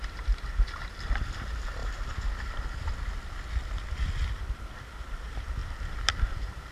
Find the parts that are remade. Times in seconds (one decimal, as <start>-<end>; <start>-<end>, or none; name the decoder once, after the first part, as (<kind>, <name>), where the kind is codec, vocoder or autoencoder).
0.0-1.8 (vocoder, BigVGAN v2); 3.9-6.7